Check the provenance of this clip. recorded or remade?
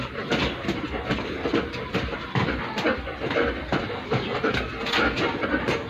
recorded